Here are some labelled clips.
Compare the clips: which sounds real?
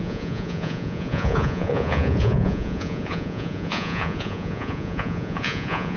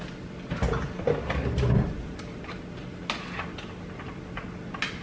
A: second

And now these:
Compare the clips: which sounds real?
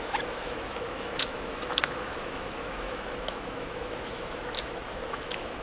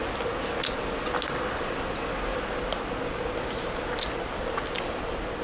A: second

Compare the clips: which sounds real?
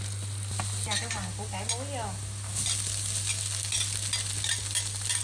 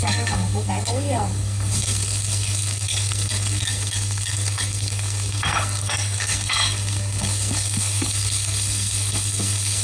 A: first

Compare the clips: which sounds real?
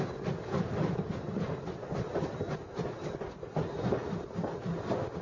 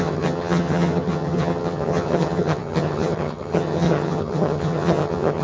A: first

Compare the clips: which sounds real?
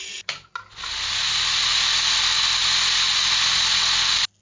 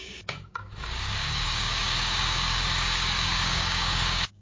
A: first